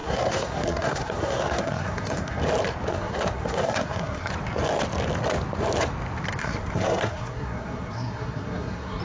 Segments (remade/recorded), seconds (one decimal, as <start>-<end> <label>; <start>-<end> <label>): 0.0-2.4 remade; 2.4-2.9 recorded; 2.9-4.3 remade; 4.3-6.4 recorded; 6.4-9.0 remade